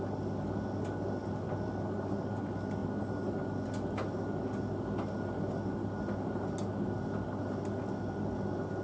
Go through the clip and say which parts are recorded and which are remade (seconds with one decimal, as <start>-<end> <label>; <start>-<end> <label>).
0.0-8.8 recorded